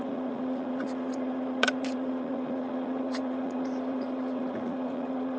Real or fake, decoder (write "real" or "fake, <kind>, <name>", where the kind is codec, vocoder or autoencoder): fake, vocoder, Vocos